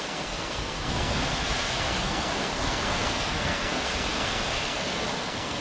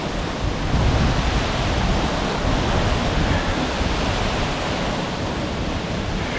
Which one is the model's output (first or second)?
first